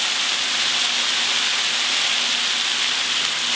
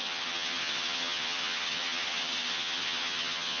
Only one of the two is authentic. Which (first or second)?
first